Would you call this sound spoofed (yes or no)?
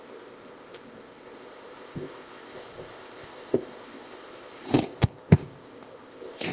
yes